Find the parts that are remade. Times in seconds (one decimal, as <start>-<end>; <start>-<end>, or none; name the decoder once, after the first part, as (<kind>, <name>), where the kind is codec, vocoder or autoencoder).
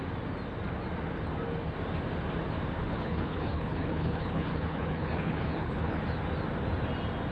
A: 2.8-6.0 (codec, HILCodec)